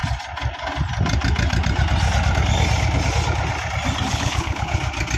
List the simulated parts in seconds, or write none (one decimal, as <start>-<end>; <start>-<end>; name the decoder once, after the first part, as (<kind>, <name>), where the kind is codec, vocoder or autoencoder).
4.1-4.8 (codec, HILCodec)